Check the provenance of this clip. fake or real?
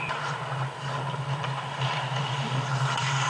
real